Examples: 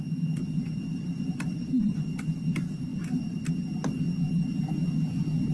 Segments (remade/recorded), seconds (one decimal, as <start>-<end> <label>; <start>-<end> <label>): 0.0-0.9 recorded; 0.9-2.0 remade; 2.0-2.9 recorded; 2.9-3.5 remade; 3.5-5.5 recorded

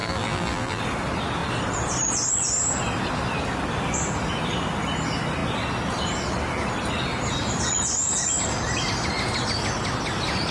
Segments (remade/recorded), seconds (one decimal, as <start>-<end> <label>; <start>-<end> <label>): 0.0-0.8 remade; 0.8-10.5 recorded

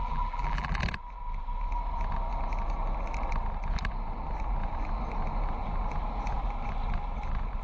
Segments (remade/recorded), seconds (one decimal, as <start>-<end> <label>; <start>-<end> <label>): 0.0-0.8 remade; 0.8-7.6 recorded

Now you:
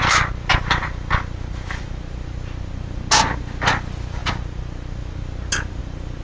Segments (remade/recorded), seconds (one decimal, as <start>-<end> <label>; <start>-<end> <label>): 0.0-6.2 recorded